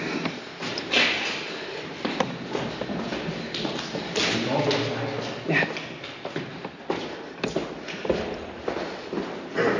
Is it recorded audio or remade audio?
recorded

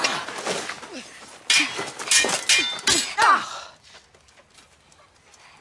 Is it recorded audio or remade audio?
recorded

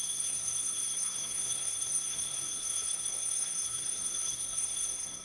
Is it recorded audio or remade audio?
remade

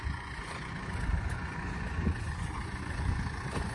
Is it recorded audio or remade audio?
remade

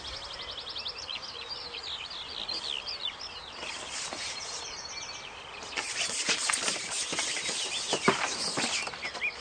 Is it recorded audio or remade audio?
recorded